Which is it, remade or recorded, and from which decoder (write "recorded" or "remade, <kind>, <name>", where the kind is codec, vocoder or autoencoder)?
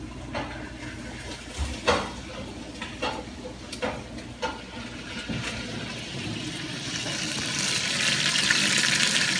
recorded